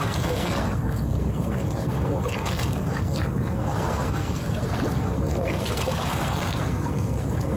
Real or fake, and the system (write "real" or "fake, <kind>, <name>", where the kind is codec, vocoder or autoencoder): fake, codec, SNAC